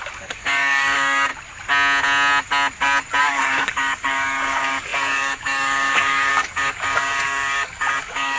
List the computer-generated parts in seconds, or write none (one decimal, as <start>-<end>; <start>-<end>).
0.0-1.3; 3.2-8.4